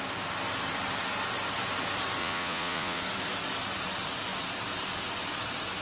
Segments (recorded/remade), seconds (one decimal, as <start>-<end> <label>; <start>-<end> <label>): 0.0-2.2 recorded; 2.2-3.0 remade; 3.0-5.8 recorded